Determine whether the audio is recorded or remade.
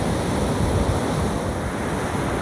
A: recorded